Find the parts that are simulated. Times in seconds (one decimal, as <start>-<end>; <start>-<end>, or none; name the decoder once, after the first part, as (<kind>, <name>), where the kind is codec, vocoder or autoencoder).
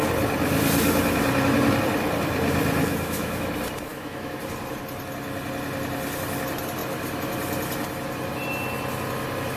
2.9-3.5 (autoencoder, DAC-VAE); 3.9-4.4